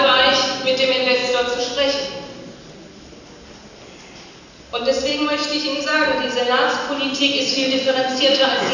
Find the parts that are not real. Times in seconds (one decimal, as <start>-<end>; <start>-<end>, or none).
none